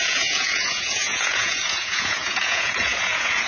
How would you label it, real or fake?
fake